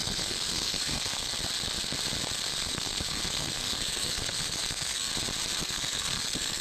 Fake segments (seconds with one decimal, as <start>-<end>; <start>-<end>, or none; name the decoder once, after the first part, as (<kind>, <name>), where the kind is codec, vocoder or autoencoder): 0.0-1.3 (codec, SNAC); 2.5-5.1; 5.6-6.6